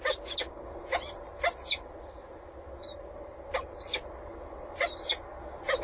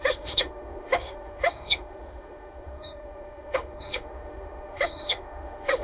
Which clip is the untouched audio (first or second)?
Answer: first